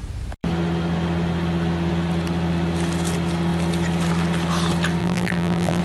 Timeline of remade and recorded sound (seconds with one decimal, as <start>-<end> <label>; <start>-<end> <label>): 0.0-5.0 recorded; 5.0-5.8 remade